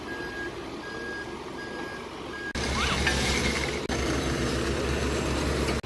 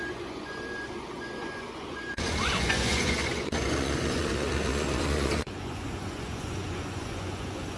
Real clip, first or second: first